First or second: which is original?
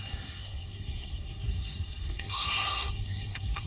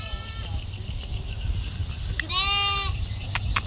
second